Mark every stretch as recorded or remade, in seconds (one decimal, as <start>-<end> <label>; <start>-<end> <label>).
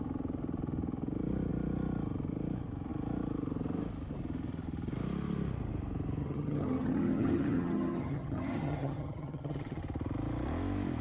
0.0-6.2 recorded; 6.2-9.8 remade; 9.8-11.0 recorded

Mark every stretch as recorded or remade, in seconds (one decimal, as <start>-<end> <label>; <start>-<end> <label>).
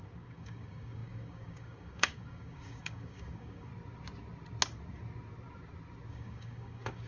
0.0-3.7 remade; 3.7-6.1 recorded; 6.1-7.1 remade